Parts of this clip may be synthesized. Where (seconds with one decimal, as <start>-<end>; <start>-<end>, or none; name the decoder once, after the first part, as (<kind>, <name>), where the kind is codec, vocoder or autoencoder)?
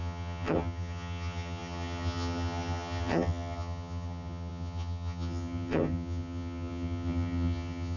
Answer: 0.0-8.0 (vocoder, HiFi-GAN)